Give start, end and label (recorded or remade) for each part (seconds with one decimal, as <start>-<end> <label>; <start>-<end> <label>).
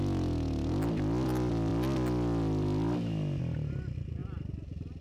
0.0-4.2 recorded; 4.2-5.0 remade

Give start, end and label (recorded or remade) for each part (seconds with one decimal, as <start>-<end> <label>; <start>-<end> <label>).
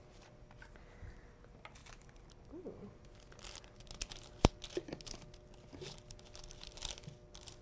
0.0-7.6 recorded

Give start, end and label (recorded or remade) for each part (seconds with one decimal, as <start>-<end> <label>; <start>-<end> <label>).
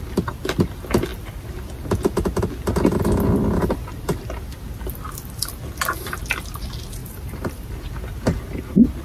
0.0-7.0 recorded; 7.0-7.7 remade; 7.7-9.0 recorded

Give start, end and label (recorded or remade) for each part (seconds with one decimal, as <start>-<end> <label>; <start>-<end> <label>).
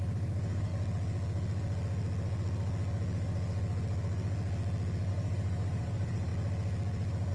0.0-0.7 remade; 0.7-5.1 recorded; 5.1-6.3 remade; 6.3-7.3 recorded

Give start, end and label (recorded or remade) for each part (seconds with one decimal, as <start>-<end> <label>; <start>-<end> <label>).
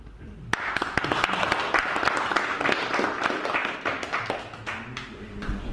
0.0-3.6 recorded; 3.6-4.1 remade; 4.1-5.7 recorded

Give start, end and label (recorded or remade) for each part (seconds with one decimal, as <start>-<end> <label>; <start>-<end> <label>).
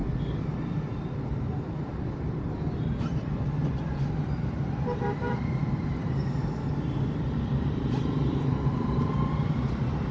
0.0-3.6 remade; 3.6-5.0 recorded; 5.0-5.6 remade; 5.6-6.7 recorded; 6.7-10.1 remade